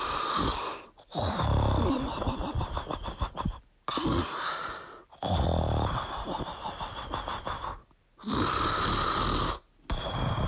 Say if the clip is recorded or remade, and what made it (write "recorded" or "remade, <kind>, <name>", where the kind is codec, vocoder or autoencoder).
recorded